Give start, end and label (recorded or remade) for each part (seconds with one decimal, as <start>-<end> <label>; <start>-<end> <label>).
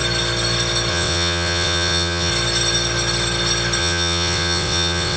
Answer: 0.0-0.9 recorded; 0.9-2.3 remade; 2.3-3.8 recorded; 3.8-5.2 remade